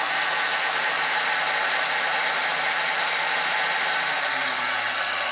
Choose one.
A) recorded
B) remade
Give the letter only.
A